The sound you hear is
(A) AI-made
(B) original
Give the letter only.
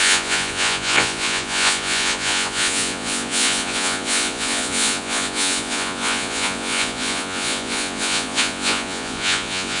A